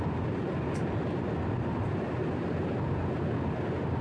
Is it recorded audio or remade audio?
recorded